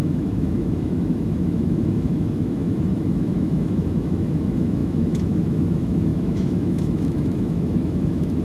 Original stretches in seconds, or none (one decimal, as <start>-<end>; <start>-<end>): none